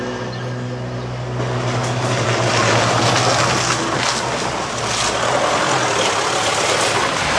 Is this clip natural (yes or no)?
yes